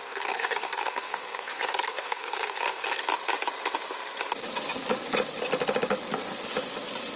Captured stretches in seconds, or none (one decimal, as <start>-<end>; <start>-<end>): 3.0-7.2